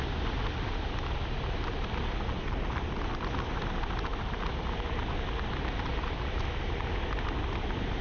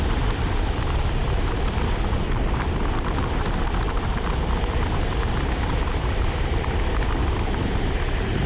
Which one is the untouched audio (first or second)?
first